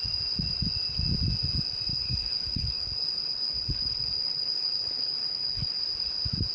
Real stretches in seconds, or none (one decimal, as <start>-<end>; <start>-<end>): 0.0-1.9; 5.8-6.5